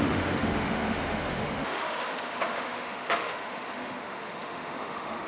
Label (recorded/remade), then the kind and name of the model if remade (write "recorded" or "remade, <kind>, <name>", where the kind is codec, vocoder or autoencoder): remade, autoencoder, DAC-VAE